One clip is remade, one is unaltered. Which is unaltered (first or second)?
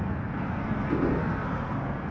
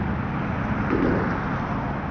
second